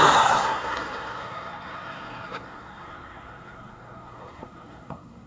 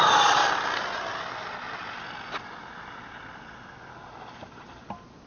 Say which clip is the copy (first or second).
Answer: first